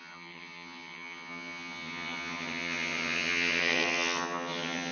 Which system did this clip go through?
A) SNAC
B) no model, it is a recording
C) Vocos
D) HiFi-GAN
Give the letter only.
D